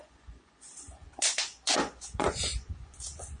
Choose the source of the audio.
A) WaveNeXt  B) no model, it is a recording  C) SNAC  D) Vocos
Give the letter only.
D